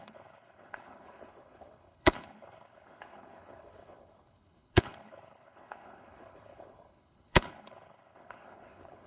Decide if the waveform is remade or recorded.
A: remade